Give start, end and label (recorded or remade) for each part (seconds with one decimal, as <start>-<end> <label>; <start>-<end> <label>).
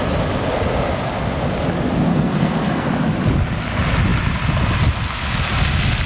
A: 0.0-2.1 recorded; 2.1-2.9 remade; 2.9-6.1 recorded